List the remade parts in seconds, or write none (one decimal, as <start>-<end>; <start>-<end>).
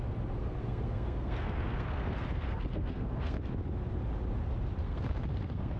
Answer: 0.4-3.4; 4.8-5.8